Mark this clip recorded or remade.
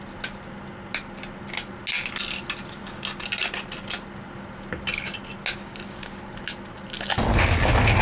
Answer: recorded